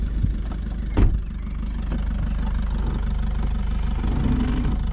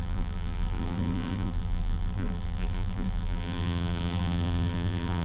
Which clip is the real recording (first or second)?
first